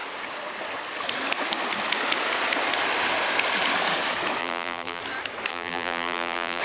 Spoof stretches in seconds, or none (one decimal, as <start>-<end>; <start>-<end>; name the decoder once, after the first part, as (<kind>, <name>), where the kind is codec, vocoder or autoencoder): 4.4-5.0 (vocoder, BigVGAN v2); 5.5-6.6